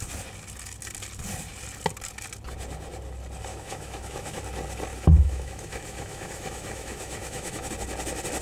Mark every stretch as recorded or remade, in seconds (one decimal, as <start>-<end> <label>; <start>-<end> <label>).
0.0-3.5 recorded; 3.5-4.4 remade; 4.4-4.9 recorded; 4.9-7.7 remade; 7.7-8.4 recorded